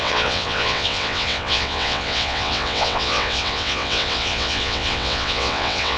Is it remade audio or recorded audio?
remade